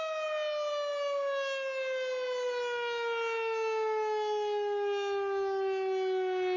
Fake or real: real